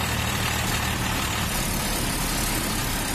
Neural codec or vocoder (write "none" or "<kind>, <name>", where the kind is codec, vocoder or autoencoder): vocoder, BigVGAN v2